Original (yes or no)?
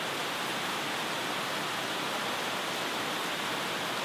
yes